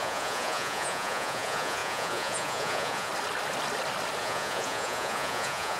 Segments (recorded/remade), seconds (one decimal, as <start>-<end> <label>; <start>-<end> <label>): 0.0-3.1 remade; 3.1-4.2 recorded; 4.2-5.8 remade